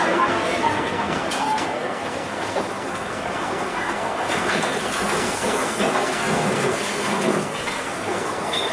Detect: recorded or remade remade